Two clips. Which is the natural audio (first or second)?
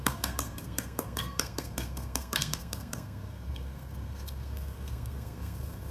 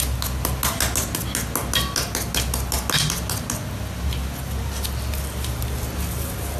second